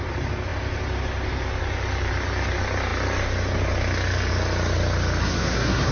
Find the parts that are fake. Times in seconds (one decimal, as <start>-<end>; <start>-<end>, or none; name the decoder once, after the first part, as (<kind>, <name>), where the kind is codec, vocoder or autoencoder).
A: 5.2-5.9 (codec, SNAC)